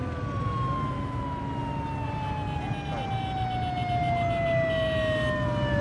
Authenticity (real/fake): real